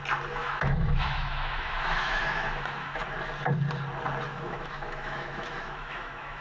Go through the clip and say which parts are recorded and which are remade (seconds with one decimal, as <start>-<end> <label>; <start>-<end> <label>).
0.0-0.4 recorded; 0.4-3.0 remade; 3.0-4.3 recorded; 4.3-6.4 remade